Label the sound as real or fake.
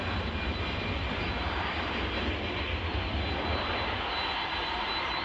fake